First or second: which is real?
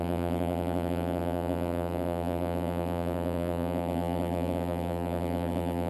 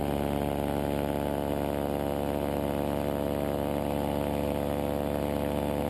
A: second